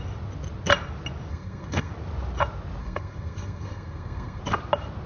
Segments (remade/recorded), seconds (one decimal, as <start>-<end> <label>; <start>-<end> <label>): 0.0-1.3 recorded; 1.3-1.9 remade; 1.9-2.8 recorded; 2.8-4.4 remade; 4.4-5.1 recorded